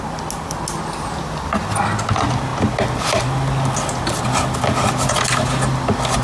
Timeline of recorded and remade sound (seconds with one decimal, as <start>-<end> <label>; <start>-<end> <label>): 0.0-6.2 recorded